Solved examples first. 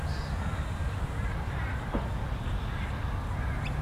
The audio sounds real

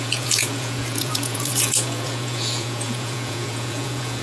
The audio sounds fake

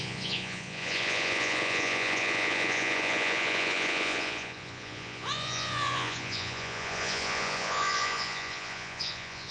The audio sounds fake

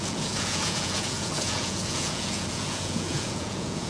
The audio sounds fake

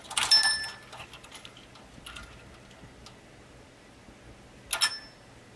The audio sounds real